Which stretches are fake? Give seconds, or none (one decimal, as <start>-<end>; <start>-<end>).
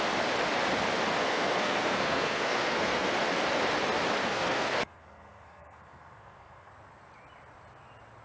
1.2-3.1; 4.2-6.7